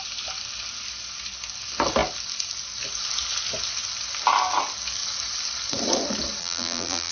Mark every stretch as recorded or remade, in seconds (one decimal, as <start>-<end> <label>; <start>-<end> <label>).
0.0-6.4 recorded; 6.4-7.1 remade